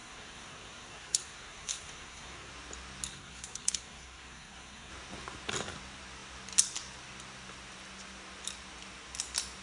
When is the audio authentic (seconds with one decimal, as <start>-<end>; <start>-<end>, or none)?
2.5-3.1; 4.9-9.6